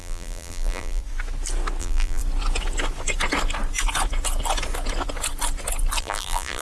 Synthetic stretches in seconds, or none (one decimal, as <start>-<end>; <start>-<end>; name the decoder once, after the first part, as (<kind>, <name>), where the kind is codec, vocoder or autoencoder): 0.0-1.0 (vocoder, BigVGAN v2); 1.8-2.2; 6.0-6.6